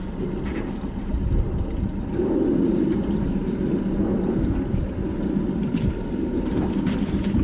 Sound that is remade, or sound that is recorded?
recorded